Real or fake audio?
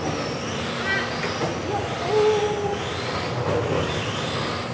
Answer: real